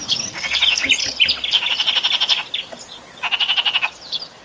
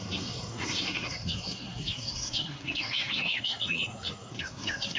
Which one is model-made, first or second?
second